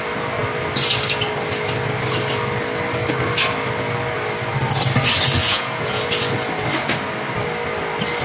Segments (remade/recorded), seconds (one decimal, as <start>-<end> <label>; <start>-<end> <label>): 0.0-5.4 recorded; 5.4-6.0 remade; 6.0-8.2 recorded